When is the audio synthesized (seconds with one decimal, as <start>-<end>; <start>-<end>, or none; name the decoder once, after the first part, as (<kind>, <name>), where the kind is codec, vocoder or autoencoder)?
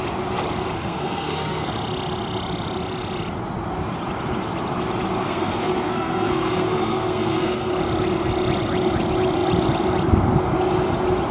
0.8-1.7 (codec, SNAC); 5.2-7.7